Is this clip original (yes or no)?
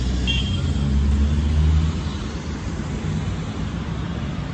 yes